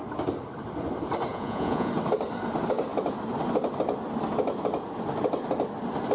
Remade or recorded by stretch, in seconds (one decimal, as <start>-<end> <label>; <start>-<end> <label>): 0.0-1.3 recorded; 1.3-1.9 remade; 1.9-6.1 recorded